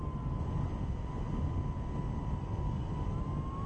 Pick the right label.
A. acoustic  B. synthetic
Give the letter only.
A